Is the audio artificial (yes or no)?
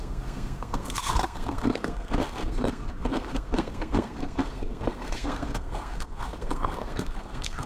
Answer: yes